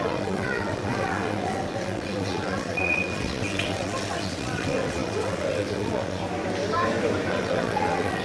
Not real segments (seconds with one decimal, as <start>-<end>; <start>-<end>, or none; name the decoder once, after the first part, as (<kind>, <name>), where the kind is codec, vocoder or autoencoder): 0.0-6.2 (vocoder, WaveNeXt); 7.3-8.2